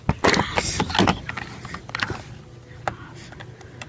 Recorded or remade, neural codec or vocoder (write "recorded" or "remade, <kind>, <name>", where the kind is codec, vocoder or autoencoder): recorded